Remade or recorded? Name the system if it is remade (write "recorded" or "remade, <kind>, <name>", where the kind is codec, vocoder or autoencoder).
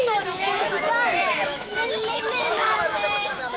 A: remade, autoencoder, DAC-VAE